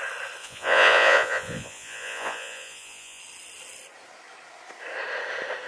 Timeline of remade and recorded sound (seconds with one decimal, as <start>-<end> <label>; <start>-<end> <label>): 0.0-0.4 recorded; 0.4-3.2 remade; 3.2-5.7 recorded